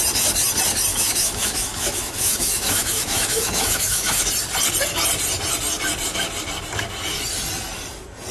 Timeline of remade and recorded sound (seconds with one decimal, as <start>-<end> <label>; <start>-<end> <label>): 0.0-0.9 recorded; 0.9-4.2 remade; 4.2-8.3 recorded